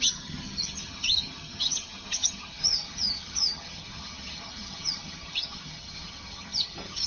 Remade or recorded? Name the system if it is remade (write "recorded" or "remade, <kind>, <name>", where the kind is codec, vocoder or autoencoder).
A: remade, vocoder, HiFi-GAN